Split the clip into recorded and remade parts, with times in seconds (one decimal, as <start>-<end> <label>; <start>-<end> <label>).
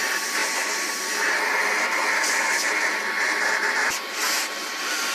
0.0-5.1 recorded